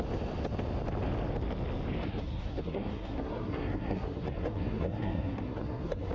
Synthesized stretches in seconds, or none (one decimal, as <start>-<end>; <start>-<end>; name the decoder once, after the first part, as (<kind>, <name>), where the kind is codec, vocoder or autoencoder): 2.0-6.1 (codec, SNAC)